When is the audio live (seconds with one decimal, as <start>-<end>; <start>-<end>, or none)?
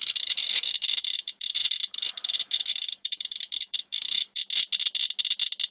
4.4-5.7